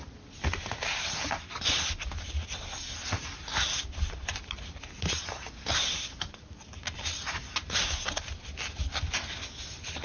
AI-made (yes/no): no